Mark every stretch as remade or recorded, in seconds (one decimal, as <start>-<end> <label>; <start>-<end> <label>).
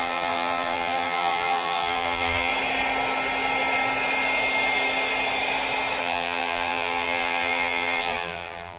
0.0-2.5 remade; 2.5-6.0 recorded; 6.0-8.8 remade